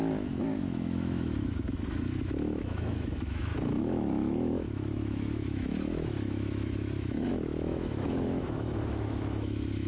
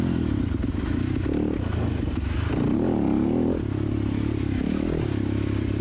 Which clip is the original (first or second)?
second